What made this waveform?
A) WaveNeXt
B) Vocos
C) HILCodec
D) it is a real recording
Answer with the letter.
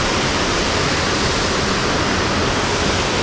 D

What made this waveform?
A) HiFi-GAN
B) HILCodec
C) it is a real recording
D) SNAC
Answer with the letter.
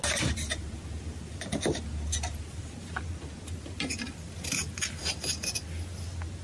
C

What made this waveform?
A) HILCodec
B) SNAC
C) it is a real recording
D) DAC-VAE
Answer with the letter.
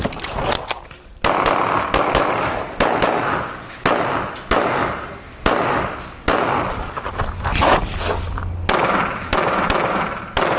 C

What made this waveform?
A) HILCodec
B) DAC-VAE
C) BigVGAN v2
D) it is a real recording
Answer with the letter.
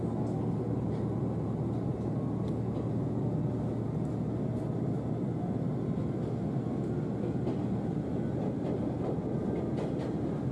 D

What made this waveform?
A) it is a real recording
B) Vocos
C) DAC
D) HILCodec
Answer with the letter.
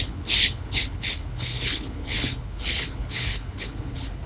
D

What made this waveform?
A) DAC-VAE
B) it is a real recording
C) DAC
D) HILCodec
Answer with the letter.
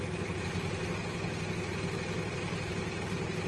B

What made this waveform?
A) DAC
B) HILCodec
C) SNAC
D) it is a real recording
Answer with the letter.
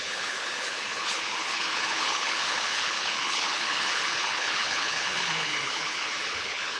B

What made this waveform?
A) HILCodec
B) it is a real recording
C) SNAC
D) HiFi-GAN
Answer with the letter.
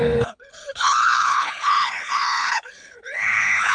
A